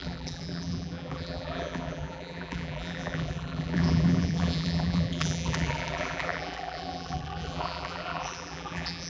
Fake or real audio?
fake